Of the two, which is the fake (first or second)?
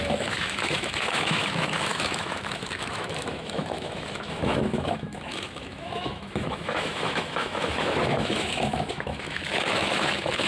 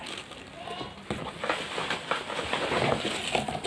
first